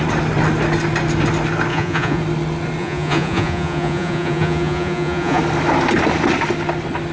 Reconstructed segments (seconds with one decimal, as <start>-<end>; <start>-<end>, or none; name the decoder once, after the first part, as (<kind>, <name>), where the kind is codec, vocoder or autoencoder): 1.7-2.2 (vocoder, Vocos); 2.8-5.4